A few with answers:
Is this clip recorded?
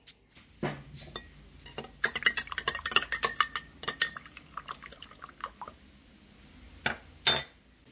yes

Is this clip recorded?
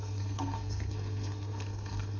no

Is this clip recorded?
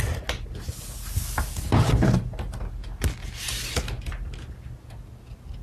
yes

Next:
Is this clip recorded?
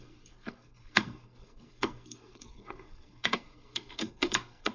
no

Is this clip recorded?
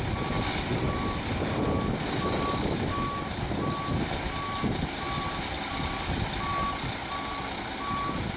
yes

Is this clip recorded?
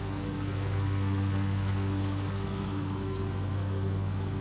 no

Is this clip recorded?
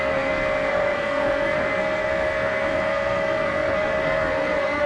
no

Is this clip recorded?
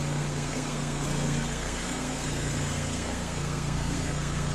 no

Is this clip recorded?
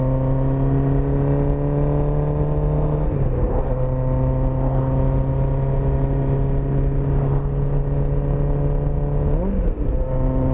yes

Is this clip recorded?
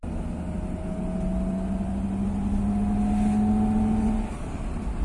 yes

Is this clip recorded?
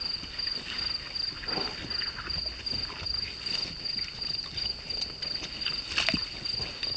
yes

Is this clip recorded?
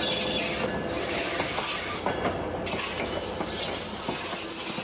yes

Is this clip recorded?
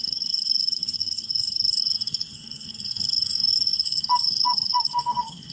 no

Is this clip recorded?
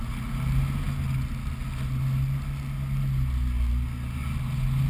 yes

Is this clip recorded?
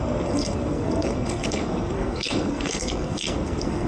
no